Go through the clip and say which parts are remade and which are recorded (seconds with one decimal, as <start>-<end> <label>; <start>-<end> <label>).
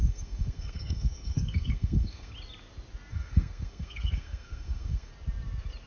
0.0-2.3 remade; 2.3-3.1 recorded; 3.1-5.1 remade; 5.1-5.9 recorded